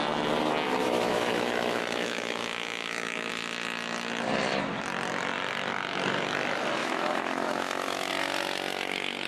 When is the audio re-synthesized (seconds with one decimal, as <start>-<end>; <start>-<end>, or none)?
0.8-3.3; 6.8-8.1